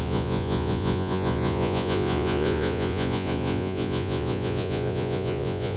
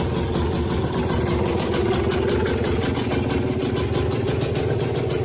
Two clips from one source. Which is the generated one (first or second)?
first